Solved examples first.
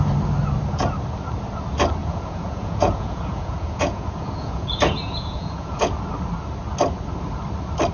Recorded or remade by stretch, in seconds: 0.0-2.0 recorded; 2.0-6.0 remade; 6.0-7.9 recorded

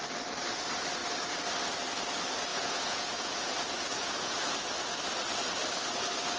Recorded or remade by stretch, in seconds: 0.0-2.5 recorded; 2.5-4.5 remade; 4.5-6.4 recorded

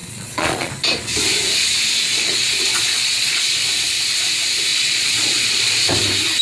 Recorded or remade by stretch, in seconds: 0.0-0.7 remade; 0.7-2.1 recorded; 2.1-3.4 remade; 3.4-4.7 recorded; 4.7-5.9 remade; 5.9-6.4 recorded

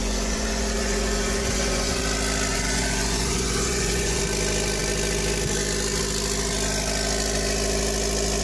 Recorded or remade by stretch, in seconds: 0.0-2.0 remade; 2.0-2.5 recorded; 2.5-4.2 remade; 4.2-8.4 recorded

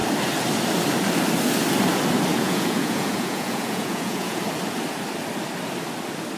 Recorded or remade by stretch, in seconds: 0.0-2.3 recorded; 2.3-4.4 remade; 4.4-6.4 recorded